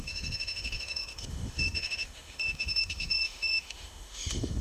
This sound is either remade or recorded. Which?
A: remade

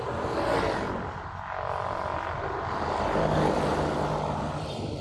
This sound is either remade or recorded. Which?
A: recorded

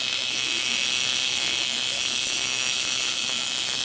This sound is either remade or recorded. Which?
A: remade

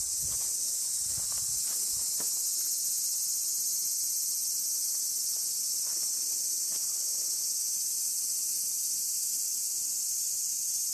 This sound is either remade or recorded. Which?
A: recorded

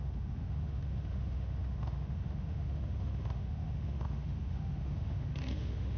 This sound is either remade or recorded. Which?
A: remade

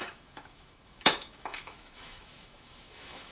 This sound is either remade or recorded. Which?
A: remade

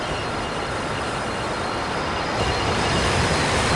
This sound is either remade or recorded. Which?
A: recorded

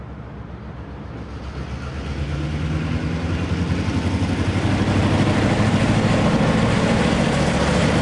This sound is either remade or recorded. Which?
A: recorded